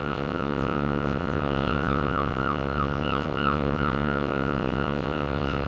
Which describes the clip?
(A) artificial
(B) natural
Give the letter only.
A